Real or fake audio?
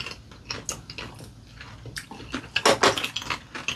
real